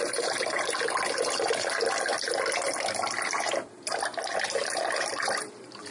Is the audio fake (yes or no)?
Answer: yes